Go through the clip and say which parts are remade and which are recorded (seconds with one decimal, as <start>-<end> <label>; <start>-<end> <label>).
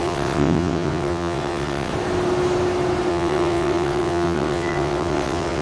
0.0-1.9 remade; 1.9-3.1 recorded; 3.1-5.6 remade